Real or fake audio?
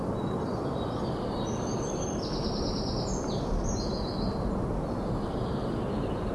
real